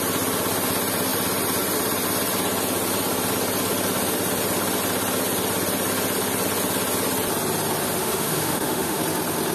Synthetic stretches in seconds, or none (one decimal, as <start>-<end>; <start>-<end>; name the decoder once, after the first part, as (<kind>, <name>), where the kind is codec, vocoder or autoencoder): 8.0-9.0 (autoencoder, DAC-VAE)